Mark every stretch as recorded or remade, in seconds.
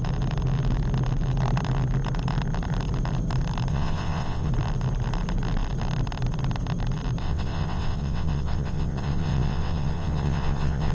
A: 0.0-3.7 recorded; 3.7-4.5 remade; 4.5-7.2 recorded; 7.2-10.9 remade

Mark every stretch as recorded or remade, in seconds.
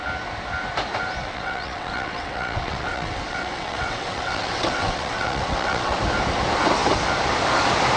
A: 0.0-1.2 recorded; 1.2-6.0 remade; 6.0-8.0 recorded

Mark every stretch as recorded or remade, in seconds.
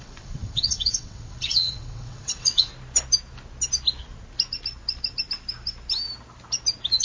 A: 0.0-2.7 remade; 2.7-7.0 recorded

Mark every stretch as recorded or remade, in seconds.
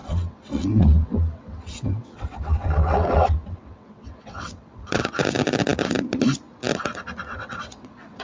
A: 0.0-5.0 remade; 5.0-7.3 recorded; 7.3-8.2 remade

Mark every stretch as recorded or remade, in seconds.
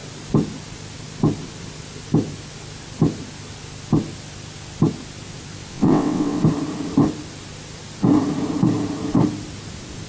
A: 0.0-5.7 recorded; 5.7-6.4 remade; 6.4-10.1 recorded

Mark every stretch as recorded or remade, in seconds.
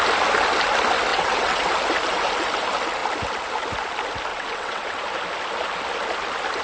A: 0.0-1.1 recorded; 1.1-1.6 remade; 1.6-4.3 recorded; 4.3-5.0 remade; 5.0-6.6 recorded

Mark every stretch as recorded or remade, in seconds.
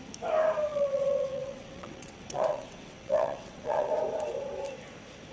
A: 0.0-0.7 recorded; 0.7-3.9 remade; 3.9-5.3 recorded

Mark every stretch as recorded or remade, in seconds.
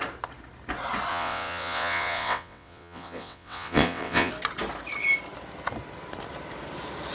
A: 0.0-1.1 recorded; 1.1-4.3 remade; 4.3-7.1 recorded